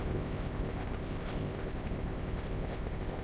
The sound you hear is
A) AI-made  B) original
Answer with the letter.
A